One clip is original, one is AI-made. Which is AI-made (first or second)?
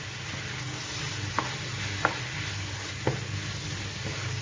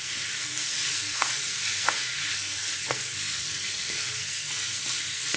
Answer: second